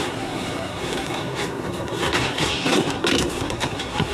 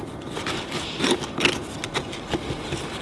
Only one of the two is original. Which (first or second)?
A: second